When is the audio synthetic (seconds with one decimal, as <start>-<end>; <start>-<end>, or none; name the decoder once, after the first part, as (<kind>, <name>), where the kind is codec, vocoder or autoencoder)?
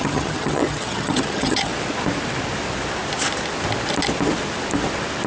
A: 0.0-1.7 (vocoder, HiFi-GAN)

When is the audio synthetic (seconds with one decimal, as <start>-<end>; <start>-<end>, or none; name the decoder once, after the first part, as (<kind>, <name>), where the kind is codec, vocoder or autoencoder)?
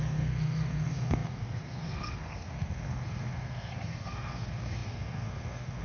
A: 0.0-5.8 (codec, SNAC)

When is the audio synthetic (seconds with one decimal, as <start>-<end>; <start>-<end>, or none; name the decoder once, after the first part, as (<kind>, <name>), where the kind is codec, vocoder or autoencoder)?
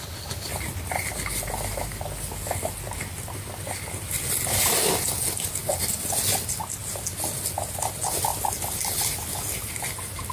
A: none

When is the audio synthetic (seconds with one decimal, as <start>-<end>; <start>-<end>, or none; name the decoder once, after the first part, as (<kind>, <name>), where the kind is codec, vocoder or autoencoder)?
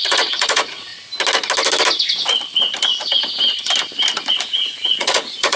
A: 0.0-0.9 (vocoder, Vocos); 4.3-5.6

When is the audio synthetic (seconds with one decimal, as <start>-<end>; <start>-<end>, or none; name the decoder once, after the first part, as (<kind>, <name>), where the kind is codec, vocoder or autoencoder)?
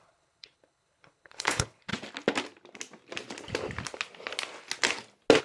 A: 0.0-1.9 (codec, HILCodec)